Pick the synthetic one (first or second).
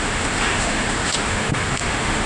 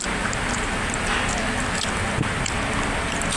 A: first